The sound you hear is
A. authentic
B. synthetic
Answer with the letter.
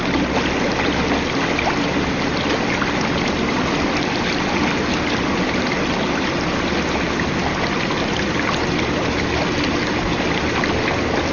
A